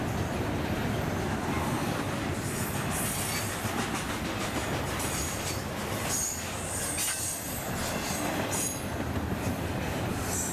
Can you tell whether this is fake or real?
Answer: real